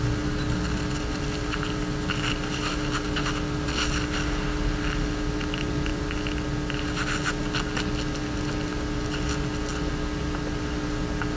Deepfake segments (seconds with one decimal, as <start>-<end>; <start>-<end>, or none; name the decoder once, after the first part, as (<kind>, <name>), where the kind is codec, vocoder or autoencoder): none